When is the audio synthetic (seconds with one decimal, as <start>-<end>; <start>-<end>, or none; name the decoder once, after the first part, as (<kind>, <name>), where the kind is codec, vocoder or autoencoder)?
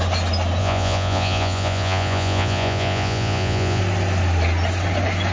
0.6-3.8 (vocoder, Vocos)